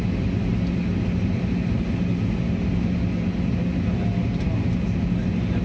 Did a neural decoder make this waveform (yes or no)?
no